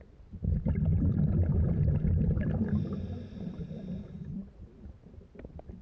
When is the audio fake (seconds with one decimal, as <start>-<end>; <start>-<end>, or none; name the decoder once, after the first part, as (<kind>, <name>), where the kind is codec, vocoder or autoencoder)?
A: 0.9-4.4 (vocoder, BigVGAN v2)